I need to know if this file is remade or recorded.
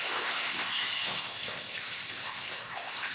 remade